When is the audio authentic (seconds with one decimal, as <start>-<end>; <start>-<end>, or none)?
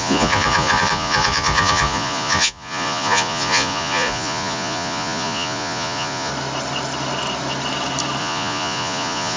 6.3-8.2